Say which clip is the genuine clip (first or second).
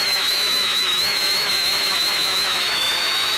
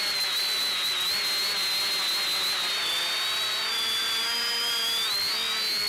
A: second